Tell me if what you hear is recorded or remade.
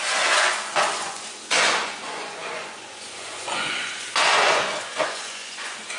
remade